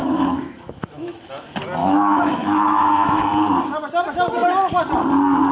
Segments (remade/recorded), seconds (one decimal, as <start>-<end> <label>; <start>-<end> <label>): 0.0-1.2 remade; 1.2-1.8 recorded; 1.8-3.2 remade; 3.2-5.5 recorded